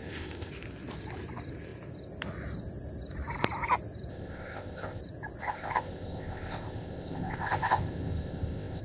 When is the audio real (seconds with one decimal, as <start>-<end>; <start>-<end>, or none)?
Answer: 0.5-4.1; 5.0-5.4

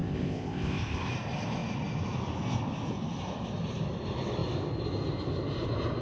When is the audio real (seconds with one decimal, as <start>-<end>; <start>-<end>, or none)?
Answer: 1.1-6.0